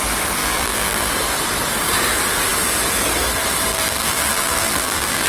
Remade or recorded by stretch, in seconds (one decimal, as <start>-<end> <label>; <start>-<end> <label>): 0.0-0.4 recorded; 0.4-1.1 remade; 1.1-3.7 recorded; 3.7-5.3 remade